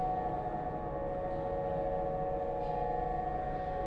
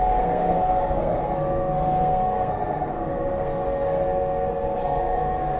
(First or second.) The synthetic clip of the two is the second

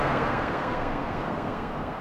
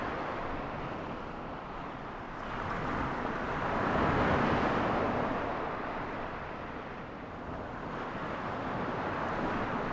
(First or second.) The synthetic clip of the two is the first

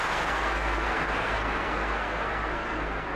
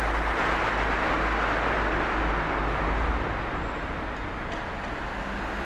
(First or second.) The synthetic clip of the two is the first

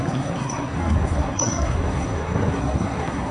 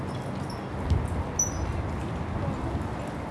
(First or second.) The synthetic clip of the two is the first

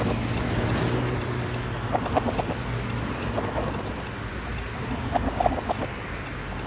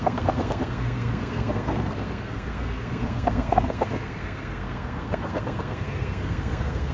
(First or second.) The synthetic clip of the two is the second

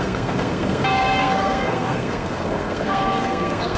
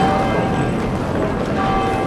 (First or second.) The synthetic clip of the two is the first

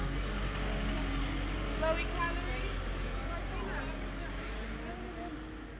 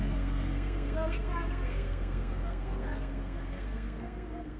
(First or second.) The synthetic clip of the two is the second